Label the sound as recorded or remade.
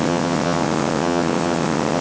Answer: remade